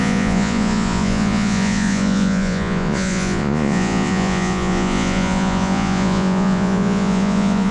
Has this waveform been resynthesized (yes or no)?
yes